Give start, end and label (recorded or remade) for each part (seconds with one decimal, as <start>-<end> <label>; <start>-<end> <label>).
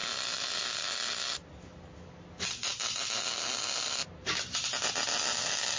0.0-4.0 recorded; 4.0-4.6 remade; 4.6-5.8 recorded